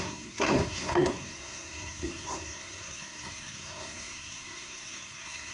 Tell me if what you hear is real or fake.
fake